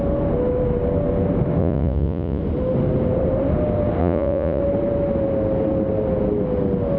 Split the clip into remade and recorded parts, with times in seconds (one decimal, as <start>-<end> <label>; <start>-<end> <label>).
0.0-1.6 recorded; 1.6-2.4 remade; 2.4-4.0 recorded; 4.0-4.6 remade; 4.6-7.0 recorded